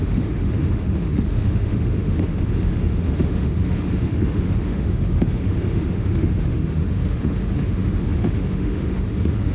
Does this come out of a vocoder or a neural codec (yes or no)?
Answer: yes